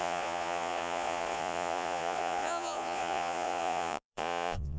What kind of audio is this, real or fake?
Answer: fake